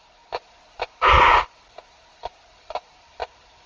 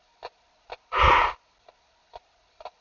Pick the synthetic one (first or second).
first